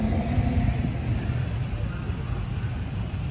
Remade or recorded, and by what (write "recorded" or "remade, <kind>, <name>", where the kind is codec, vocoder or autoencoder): recorded